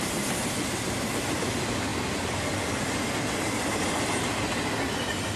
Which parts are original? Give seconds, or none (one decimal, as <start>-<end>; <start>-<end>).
0.0-5.4